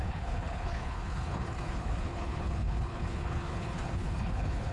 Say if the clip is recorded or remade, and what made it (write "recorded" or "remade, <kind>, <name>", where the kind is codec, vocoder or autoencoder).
remade, codec, HILCodec